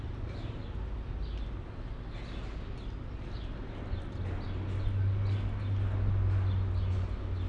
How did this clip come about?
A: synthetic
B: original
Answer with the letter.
B